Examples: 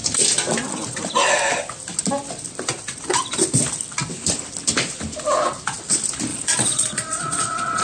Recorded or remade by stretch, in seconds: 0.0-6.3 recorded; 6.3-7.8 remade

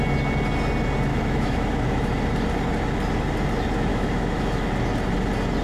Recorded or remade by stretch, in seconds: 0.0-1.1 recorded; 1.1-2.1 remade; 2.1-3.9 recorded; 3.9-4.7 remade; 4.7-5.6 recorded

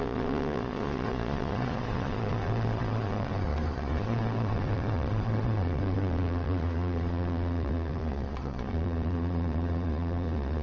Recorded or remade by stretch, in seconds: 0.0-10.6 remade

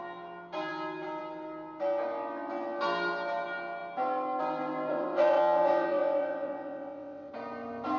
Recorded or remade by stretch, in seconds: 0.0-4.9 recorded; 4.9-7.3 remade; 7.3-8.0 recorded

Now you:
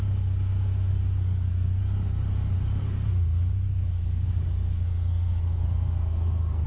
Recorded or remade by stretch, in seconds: 0.0-0.9 recorded; 0.9-1.8 remade; 1.8-2.8 recorded; 2.8-6.7 remade